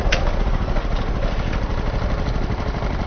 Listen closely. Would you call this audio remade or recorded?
recorded